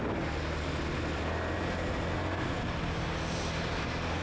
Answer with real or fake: real